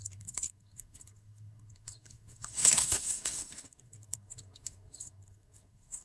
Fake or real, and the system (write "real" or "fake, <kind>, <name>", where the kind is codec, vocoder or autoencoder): fake, codec, SNAC